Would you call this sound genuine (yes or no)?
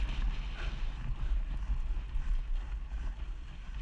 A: yes